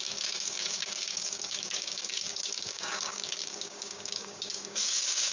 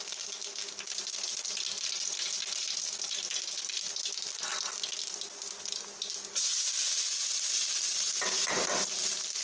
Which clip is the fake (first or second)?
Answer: first